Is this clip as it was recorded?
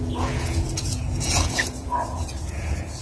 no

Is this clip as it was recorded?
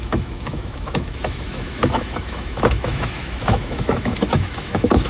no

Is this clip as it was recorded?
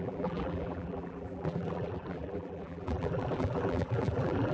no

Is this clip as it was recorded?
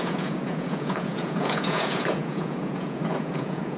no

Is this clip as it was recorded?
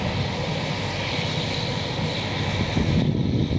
yes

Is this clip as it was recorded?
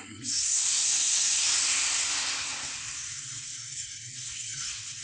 no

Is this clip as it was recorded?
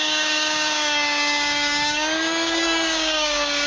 no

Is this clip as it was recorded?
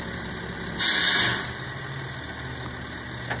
yes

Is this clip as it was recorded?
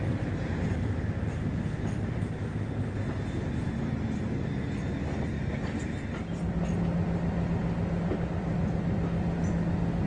yes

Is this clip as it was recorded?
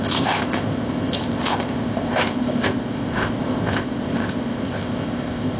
no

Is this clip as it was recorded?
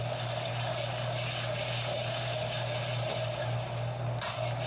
yes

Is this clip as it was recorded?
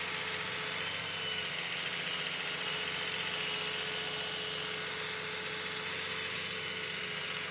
yes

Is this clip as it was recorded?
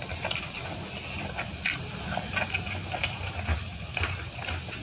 yes